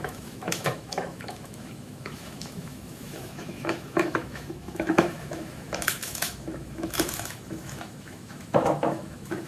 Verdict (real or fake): fake